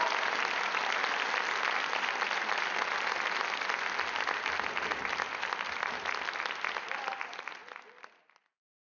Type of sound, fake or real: real